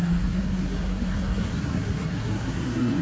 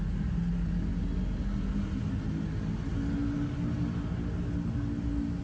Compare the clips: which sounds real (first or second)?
second